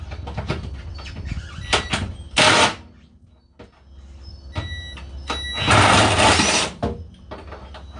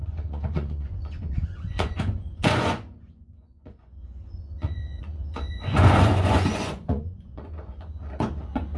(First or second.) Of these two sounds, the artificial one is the second